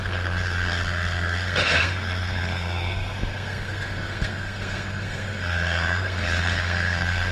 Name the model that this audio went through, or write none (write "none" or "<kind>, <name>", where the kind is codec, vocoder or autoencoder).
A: codec, SNAC